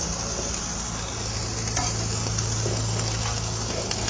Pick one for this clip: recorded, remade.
recorded